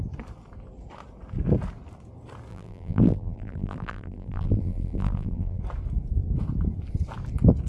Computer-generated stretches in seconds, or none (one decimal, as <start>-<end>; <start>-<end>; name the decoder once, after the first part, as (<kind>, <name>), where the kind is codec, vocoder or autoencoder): 2.5-5.6 (vocoder, BigVGAN v2)